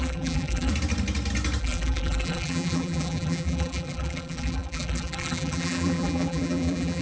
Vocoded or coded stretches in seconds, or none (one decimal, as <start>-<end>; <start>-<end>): 0.0-0.7; 1.6-7.0